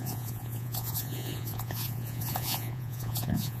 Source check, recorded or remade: remade